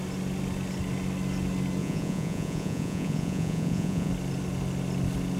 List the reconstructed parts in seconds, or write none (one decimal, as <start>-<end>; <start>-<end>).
1.8-4.1